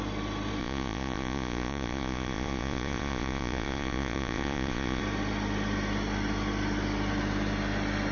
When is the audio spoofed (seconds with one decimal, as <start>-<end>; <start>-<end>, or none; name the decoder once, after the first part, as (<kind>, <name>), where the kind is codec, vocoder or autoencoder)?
0.6-5.0 (vocoder, Vocos)